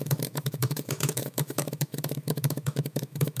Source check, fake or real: fake